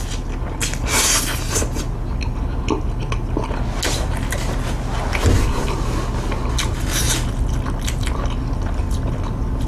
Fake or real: real